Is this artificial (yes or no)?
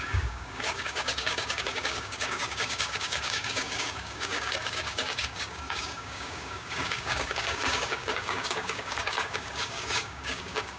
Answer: yes